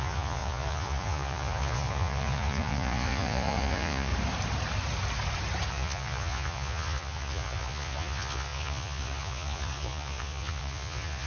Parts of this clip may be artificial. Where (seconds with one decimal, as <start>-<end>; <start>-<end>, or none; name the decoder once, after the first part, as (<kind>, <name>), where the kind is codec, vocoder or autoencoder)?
0.0-4.1 (vocoder, Vocos); 5.7-11.3